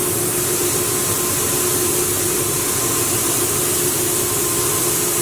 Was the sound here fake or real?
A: real